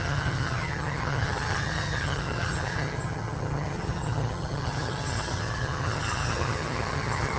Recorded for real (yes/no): no